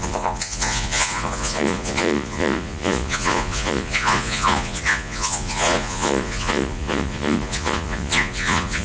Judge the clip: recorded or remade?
remade